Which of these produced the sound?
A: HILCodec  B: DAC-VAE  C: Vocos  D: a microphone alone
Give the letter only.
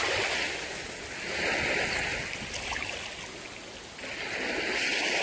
D